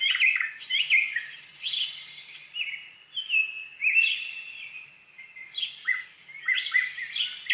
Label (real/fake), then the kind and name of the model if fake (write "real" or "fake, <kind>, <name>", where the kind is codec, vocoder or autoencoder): real